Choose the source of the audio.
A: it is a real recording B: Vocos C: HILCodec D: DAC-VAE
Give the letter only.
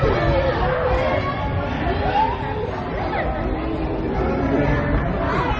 A